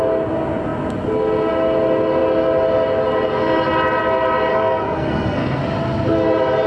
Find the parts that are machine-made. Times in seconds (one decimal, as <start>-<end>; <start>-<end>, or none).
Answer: 4.5-5.6